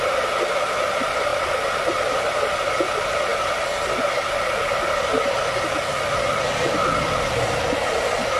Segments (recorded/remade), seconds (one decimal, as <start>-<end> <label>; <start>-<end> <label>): 0.0-8.4 recorded